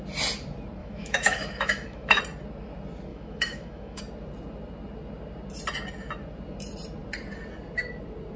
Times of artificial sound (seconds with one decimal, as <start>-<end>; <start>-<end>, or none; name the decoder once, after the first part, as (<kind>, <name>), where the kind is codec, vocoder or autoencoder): 0.8-2.2 (autoencoder, DAC-VAE); 3.1-4.0